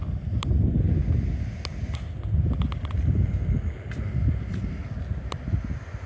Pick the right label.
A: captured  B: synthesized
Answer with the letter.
A